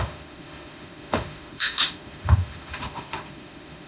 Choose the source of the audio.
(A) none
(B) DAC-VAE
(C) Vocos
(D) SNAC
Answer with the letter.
B